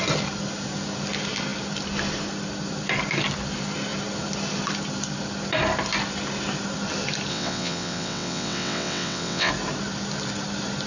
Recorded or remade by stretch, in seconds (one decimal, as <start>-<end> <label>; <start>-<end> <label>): 0.0-7.3 recorded; 7.3-9.5 remade; 9.5-10.9 recorded